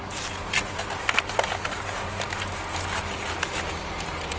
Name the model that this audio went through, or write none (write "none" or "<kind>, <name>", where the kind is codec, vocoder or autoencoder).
none